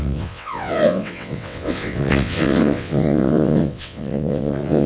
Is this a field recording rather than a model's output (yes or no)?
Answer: no